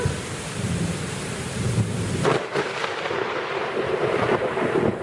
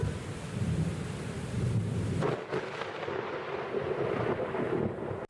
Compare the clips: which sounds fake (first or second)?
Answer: first